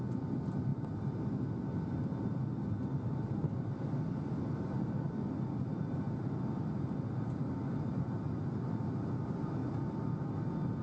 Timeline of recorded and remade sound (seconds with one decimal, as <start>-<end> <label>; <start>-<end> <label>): 0.0-10.8 recorded